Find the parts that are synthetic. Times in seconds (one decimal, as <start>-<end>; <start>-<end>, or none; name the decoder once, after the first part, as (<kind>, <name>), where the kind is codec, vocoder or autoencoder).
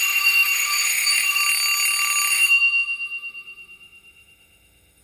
0.0-1.4 (autoencoder, DAC-VAE); 2.3-5.0